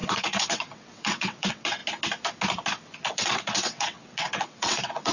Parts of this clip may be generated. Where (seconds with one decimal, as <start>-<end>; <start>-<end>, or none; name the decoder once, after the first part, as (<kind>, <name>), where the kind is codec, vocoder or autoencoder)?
0.0-1.8 (vocoder, WaveNeXt); 3.1-5.1